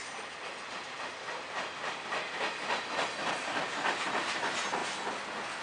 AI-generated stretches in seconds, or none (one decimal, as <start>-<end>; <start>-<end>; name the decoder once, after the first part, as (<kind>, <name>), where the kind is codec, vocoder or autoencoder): none